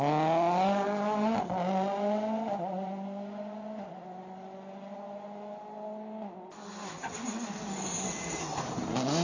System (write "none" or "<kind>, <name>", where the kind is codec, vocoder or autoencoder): none